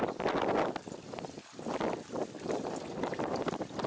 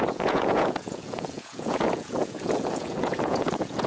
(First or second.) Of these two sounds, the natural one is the first